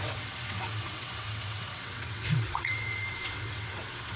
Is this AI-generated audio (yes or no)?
yes